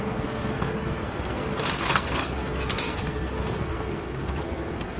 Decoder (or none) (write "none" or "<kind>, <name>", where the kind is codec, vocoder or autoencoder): codec, SNAC